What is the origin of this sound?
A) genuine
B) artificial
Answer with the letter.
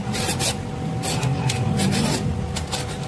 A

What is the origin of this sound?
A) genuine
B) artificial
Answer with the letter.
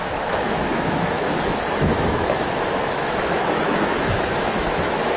B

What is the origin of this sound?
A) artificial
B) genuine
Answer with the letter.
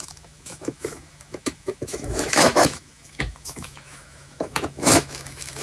A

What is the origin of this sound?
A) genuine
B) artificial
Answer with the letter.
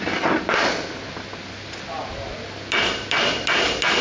A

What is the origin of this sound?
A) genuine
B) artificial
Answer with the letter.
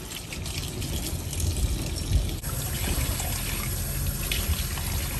A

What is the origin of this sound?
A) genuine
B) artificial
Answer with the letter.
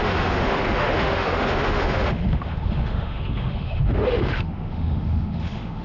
B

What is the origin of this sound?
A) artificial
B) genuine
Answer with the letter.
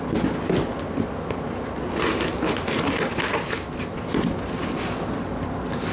B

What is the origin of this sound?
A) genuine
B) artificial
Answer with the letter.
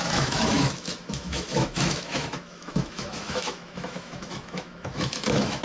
B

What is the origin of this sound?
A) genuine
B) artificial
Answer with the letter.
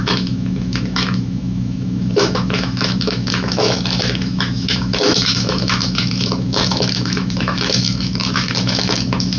B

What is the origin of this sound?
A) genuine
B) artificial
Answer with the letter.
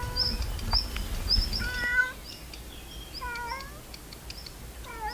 A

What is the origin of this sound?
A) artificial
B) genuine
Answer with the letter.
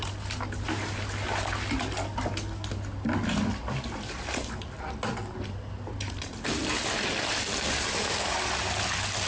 B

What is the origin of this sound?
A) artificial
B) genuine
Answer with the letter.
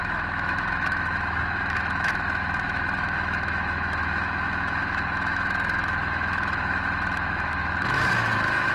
A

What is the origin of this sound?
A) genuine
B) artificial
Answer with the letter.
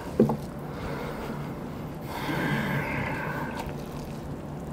A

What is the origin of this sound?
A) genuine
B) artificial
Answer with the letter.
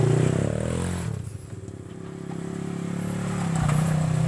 A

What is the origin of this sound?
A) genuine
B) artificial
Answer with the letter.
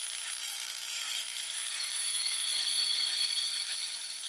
B